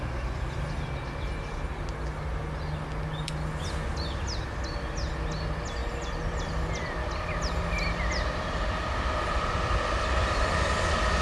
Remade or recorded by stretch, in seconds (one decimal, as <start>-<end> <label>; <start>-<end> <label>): 0.0-11.2 recorded